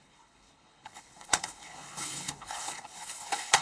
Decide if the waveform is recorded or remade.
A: remade